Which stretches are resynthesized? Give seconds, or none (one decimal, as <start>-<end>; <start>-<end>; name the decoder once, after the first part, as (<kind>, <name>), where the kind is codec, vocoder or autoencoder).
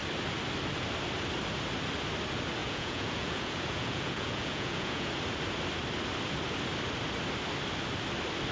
2.6-5.1 (vocoder, Vocos)